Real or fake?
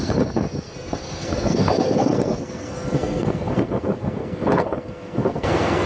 fake